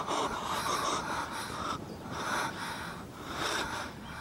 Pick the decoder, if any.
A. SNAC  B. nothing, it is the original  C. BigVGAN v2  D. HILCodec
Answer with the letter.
C